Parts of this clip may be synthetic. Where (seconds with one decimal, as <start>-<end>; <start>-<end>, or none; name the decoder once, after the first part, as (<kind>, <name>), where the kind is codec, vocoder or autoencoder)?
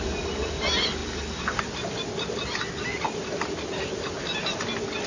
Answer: none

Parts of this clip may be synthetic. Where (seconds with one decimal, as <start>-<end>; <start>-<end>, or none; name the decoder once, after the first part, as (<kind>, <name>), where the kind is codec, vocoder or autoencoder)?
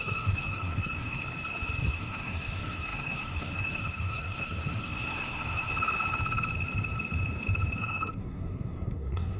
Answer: 0.0-1.2 (codec, SNAC); 1.8-5.7; 7.8-9.4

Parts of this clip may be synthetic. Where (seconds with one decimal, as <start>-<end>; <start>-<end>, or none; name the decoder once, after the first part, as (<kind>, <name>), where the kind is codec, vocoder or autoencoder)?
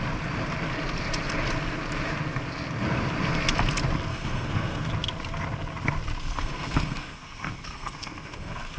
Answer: 4.1-4.9 (codec, SNAC); 6.2-8.8